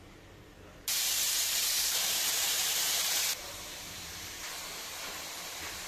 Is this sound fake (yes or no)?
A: yes